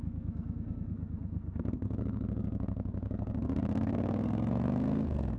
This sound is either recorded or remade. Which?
remade